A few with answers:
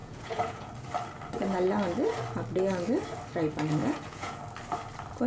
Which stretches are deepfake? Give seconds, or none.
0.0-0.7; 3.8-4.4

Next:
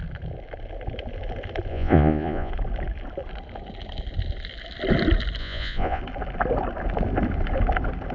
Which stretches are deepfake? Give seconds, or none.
1.7-2.5; 5.4-6.0

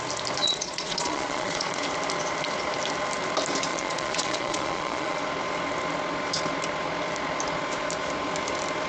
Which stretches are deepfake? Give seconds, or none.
0.4-1.8; 3.7-5.2

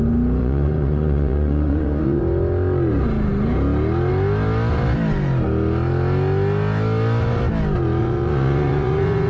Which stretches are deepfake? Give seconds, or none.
0.4-2.2; 8.0-9.3

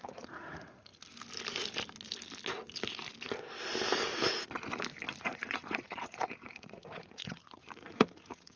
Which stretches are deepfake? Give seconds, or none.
0.0-0.9; 5.2-8.6

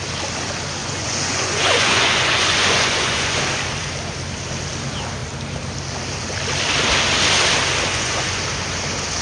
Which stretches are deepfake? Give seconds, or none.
0.8-3.4; 7.9-8.4

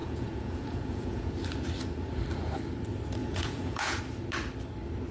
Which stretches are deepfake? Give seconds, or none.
0.0-1.3; 3.2-4.0

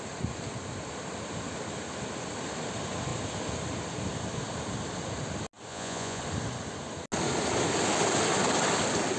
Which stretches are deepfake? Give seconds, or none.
5.7-6.2